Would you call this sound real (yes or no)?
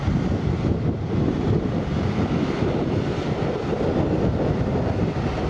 yes